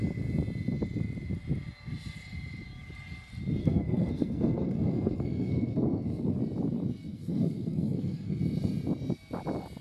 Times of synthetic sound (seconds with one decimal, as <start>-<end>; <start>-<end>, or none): 3.6-6.4; 7.1-8.4